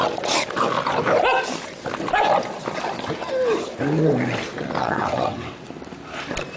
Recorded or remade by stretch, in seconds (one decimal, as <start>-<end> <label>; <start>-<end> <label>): 0.0-4.8 recorded; 4.8-5.7 remade; 5.7-6.6 recorded